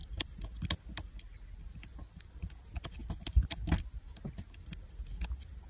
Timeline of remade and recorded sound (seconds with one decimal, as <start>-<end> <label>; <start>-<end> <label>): 0.0-5.7 recorded